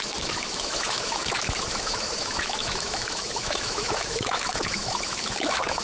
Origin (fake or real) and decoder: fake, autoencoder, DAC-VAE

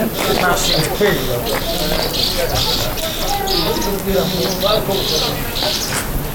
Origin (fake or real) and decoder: real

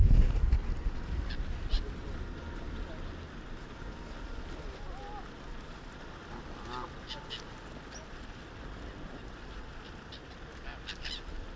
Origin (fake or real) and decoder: real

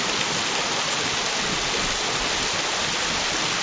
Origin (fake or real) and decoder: real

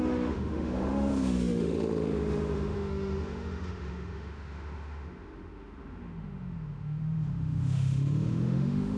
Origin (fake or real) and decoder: fake, autoencoder, DAC-VAE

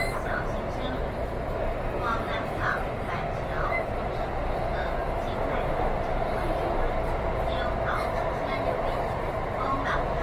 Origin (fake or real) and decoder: real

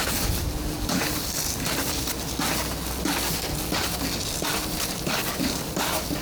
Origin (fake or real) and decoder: real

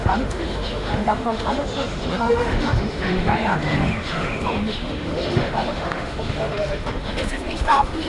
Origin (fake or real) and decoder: fake, autoencoder, DAC-VAE